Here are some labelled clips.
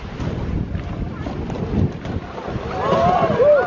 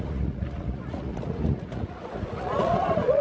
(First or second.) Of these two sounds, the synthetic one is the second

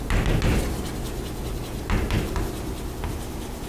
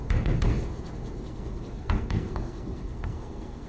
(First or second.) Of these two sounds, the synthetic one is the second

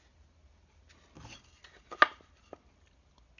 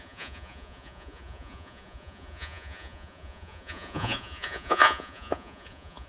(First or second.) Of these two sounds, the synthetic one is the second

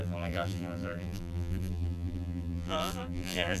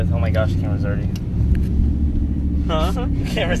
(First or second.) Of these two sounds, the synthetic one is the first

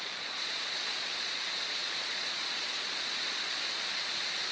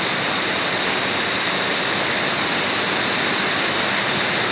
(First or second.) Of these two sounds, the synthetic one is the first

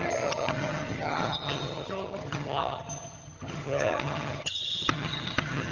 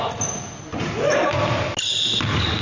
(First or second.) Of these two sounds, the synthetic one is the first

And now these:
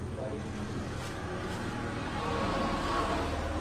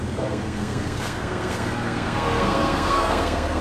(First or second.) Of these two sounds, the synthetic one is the second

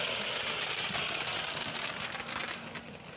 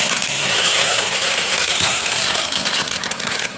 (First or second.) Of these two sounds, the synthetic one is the second